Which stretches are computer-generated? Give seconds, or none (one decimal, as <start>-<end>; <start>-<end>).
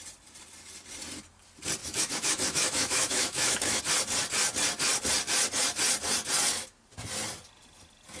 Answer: 1.8-3.8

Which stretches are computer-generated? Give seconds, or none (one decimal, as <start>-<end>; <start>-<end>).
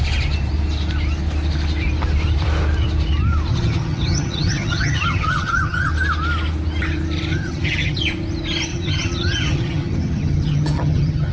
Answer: 3.5-5.9; 7.3-8.0; 8.7-11.3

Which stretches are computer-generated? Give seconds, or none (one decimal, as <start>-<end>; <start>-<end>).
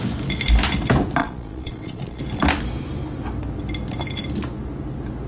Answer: 1.2-2.2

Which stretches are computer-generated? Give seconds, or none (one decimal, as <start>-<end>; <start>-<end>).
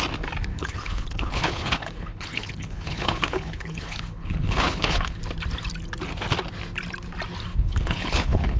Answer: 0.5-5.2; 7.5-8.6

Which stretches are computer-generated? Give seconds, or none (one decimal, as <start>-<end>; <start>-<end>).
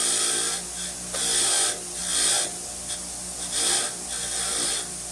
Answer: 2.0-5.1